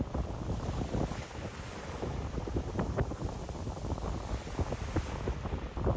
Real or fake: real